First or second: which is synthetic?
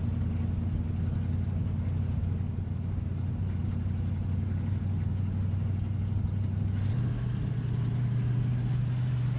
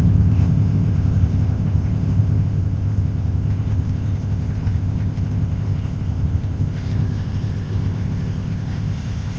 second